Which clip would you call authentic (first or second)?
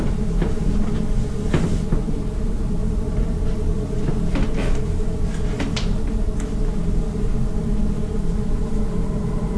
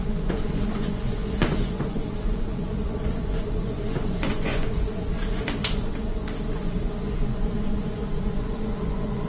first